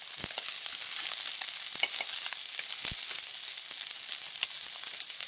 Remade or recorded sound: recorded